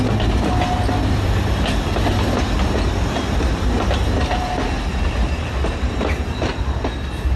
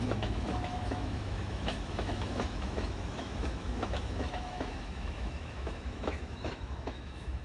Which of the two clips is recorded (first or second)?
first